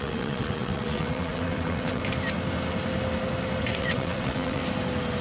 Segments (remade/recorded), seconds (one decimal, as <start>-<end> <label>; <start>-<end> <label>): 0.0-2.0 remade; 2.0-3.6 recorded; 3.6-4.6 remade; 4.6-5.2 recorded